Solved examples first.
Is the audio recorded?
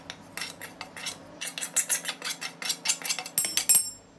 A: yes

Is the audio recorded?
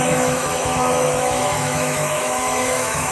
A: no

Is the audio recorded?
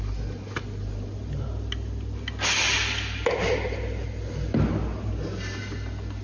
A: yes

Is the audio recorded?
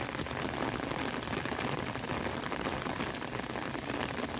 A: yes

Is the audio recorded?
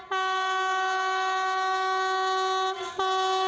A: yes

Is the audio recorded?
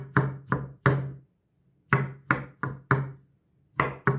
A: yes